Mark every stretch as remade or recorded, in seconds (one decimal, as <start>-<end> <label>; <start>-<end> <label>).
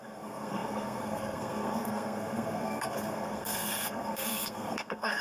0.0-5.2 remade